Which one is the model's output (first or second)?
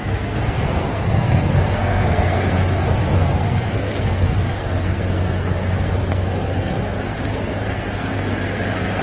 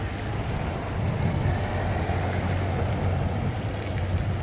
first